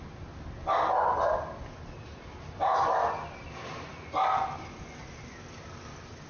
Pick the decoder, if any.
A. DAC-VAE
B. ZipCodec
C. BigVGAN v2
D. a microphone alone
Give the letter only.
D